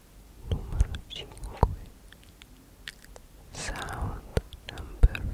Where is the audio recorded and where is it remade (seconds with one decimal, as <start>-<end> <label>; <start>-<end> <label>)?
0.0-5.3 recorded